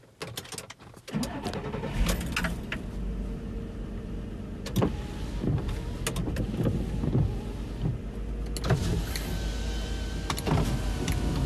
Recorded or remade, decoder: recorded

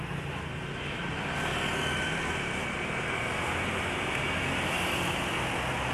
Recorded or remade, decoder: recorded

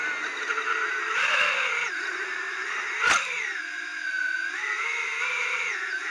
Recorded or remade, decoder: recorded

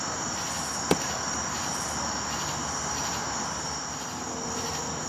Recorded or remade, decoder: recorded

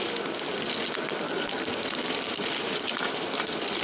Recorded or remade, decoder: recorded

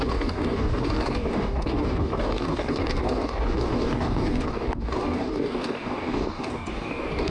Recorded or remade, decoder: remade, codec, DAC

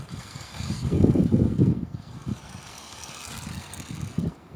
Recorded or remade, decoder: remade, codec, SNAC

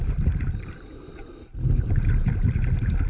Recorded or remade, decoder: recorded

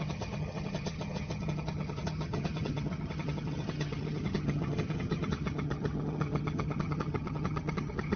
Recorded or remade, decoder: remade, vocoder, HiFi-GAN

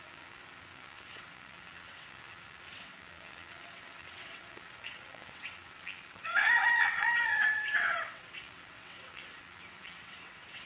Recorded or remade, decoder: remade, vocoder, WaveNeXt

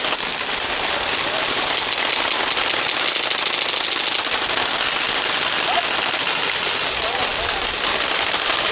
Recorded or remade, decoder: recorded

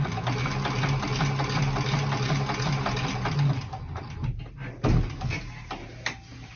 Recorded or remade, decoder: recorded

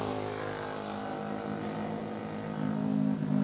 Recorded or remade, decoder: recorded